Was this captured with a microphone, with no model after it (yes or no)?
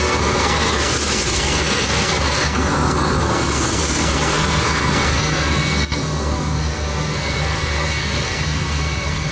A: no